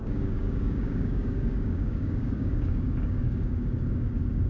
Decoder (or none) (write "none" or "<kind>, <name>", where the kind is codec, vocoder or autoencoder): codec, DAC